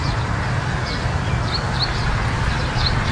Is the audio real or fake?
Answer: real